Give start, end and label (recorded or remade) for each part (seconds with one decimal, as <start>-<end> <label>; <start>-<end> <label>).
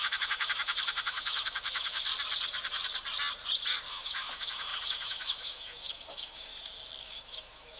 0.0-2.1 remade; 2.1-3.9 recorded; 3.9-6.5 remade; 6.5-7.0 recorded; 7.0-7.8 remade